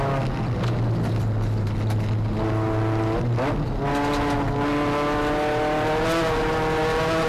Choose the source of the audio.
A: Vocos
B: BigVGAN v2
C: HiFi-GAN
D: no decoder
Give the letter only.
D